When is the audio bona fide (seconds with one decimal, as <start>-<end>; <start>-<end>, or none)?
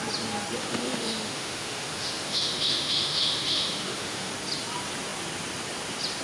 0.0-0.6; 4.3-6.2